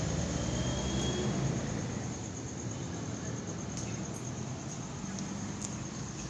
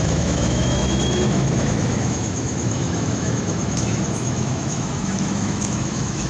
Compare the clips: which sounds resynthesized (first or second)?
second